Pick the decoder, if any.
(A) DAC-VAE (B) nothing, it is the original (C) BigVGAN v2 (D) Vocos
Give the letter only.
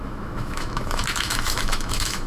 A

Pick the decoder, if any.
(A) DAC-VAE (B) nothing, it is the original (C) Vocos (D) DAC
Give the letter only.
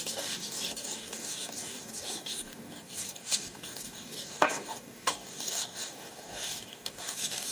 D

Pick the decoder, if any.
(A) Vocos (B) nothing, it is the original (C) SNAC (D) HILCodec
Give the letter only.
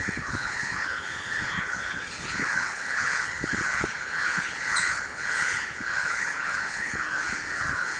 D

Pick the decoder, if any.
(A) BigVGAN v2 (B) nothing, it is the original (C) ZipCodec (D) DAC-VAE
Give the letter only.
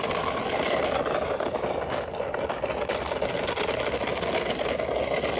B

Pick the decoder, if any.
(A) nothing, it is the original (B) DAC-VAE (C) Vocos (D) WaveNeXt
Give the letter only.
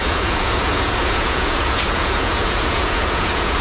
C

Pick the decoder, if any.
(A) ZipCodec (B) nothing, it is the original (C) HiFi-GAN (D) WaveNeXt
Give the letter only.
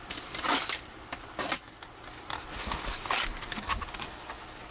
B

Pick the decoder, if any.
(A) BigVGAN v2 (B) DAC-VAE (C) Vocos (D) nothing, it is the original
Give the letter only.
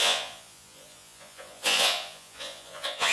C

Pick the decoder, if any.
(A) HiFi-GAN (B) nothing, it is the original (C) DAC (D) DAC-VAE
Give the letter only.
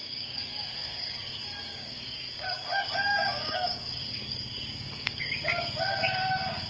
C